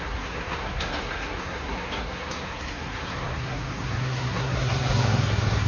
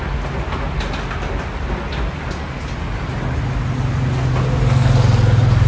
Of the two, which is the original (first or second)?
second